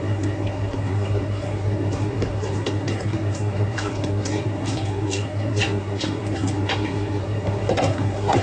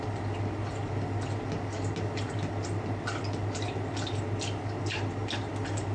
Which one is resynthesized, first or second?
first